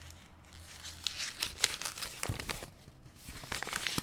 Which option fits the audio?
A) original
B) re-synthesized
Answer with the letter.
A